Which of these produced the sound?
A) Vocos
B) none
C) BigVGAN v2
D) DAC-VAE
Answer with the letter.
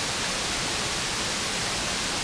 C